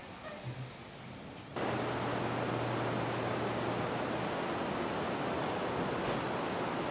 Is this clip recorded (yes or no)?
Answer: yes